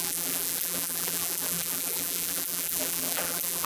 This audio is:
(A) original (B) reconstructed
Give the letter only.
B